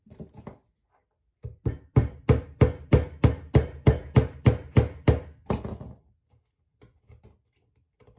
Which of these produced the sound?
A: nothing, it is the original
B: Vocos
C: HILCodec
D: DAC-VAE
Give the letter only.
A